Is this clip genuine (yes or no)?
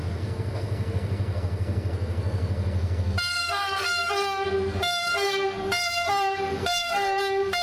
no